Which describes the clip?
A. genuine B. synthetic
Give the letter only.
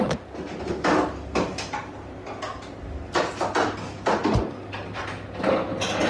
A